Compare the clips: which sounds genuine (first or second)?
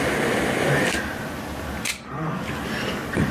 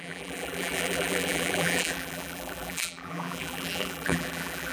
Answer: first